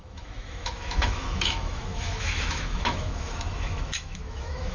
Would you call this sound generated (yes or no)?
yes